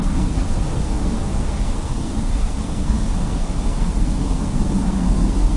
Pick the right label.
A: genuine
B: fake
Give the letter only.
B